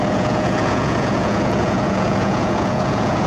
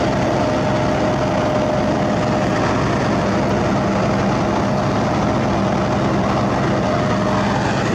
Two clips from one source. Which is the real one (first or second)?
second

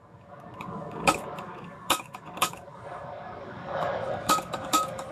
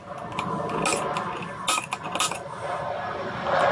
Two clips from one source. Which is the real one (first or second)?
second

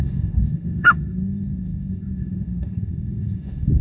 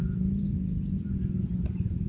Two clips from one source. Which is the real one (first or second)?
second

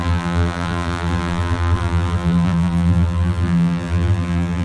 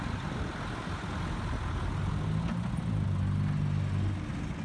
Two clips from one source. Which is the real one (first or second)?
second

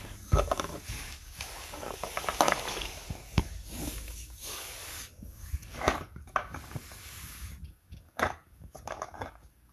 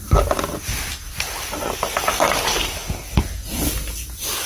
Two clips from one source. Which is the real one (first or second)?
second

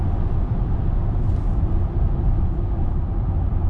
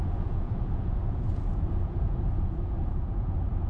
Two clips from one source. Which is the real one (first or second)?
first